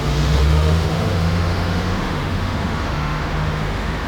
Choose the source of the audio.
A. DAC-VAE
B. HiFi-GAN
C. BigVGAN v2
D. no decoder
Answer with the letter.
A